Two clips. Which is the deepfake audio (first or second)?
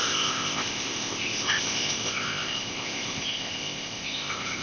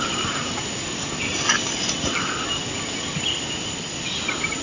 first